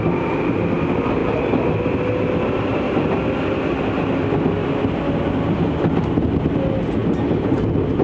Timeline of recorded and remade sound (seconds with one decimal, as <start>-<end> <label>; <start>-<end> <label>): 0.0-1.2 recorded; 1.2-1.8 remade; 1.8-8.0 recorded